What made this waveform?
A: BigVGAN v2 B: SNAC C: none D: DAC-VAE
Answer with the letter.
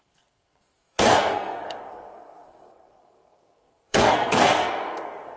B